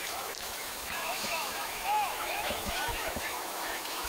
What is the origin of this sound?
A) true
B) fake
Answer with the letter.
B